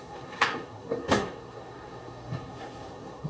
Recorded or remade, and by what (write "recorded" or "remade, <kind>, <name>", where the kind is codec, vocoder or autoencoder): remade, codec, SNAC